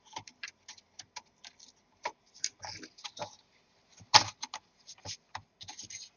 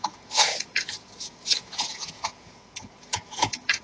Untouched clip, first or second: first